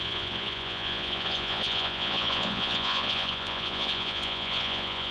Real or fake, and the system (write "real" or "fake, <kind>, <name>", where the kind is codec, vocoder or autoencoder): fake, vocoder, Vocos